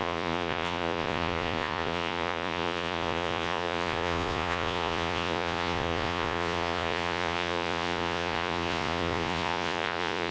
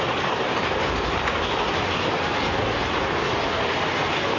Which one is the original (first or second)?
second